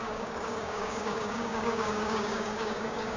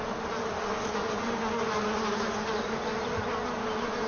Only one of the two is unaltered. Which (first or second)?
second